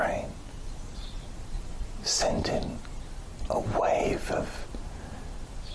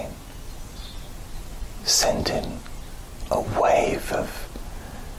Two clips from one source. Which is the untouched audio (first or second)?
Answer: second